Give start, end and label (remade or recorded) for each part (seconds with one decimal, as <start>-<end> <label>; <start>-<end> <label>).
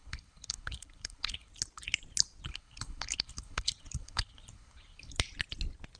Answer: 0.0-1.5 remade; 1.5-2.5 recorded; 2.5-5.1 remade; 5.1-6.0 recorded